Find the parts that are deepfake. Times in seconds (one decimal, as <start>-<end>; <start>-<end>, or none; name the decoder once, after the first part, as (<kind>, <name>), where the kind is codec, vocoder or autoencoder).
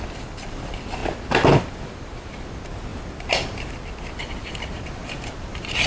0.0-1.0 (vocoder, BigVGAN v2); 1.6-2.9; 3.7-5.9